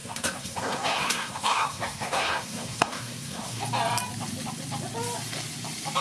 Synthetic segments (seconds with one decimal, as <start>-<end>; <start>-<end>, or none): 0.0-3.6